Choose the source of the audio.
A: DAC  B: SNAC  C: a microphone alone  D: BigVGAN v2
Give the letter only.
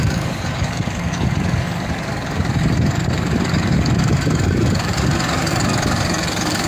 A